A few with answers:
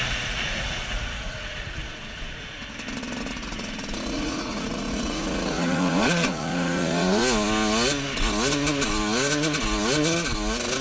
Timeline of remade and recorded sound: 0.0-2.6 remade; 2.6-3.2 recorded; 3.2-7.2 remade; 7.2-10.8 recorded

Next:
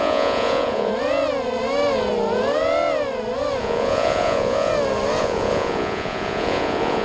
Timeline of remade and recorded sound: 0.0-0.9 remade; 0.9-3.6 recorded; 3.6-4.7 remade; 4.7-5.2 recorded; 5.2-7.0 remade

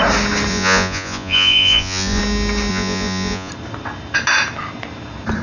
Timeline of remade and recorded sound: 0.0-0.5 recorded; 0.5-2.2 remade; 2.2-2.7 recorded; 2.7-3.5 remade; 3.5-5.4 recorded

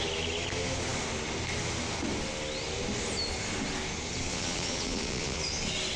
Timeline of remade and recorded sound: 0.0-4.3 recorded; 4.3-5.4 remade; 5.4-6.0 recorded